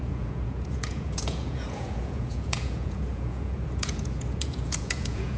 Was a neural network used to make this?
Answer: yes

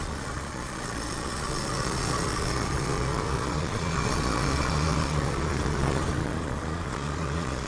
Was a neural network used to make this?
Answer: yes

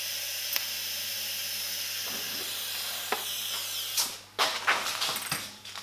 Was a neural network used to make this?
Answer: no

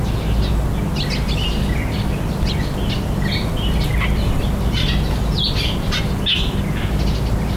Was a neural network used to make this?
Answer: no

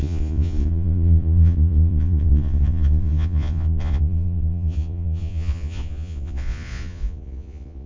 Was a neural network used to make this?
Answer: yes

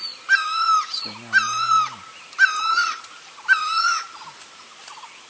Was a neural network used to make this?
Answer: no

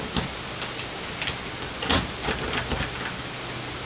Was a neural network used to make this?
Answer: no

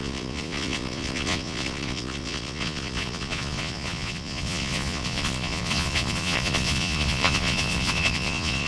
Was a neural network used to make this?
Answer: yes